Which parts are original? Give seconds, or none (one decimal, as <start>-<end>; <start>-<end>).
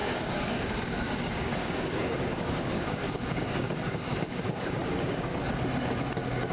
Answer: 5.3-6.5